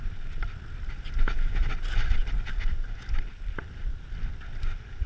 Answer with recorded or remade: recorded